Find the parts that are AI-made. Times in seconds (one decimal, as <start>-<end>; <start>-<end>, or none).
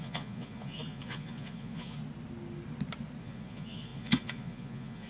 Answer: 0.0-2.0; 3.2-5.1